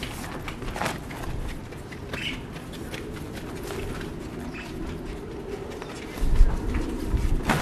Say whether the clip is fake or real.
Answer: real